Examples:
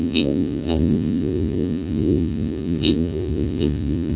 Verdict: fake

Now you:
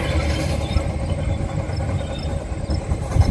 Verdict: real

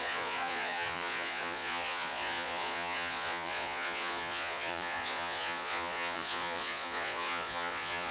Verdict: fake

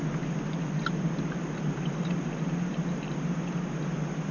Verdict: real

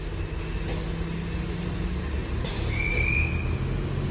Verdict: real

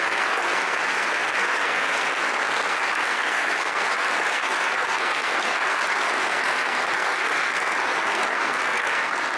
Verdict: fake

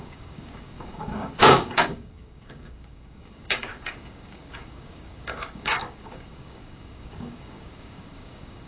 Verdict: fake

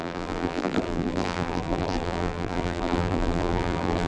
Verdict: fake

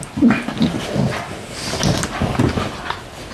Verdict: real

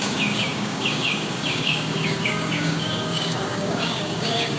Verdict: fake